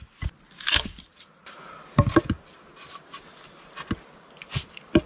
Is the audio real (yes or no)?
yes